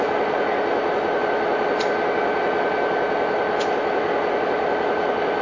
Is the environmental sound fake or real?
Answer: real